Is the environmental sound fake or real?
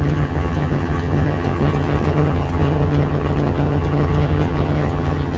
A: fake